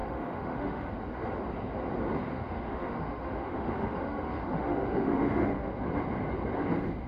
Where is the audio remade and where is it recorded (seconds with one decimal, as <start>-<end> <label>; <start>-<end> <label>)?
0.0-0.9 remade; 0.9-2.3 recorded; 2.3-5.7 remade; 5.7-7.1 recorded